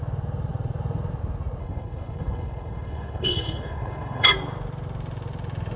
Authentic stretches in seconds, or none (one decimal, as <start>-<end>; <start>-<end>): 0.0-1.6; 4.3-5.8